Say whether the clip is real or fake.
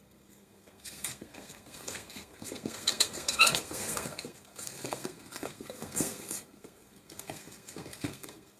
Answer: fake